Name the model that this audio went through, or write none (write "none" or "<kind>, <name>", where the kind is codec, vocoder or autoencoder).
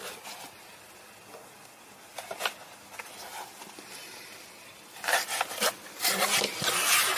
none